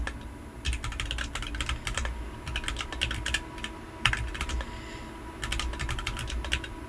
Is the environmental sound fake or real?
real